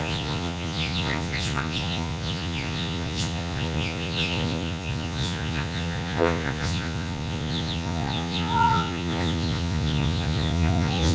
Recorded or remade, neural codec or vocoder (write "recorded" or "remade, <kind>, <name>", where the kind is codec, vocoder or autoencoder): remade, vocoder, Vocos